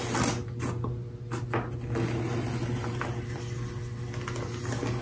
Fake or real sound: real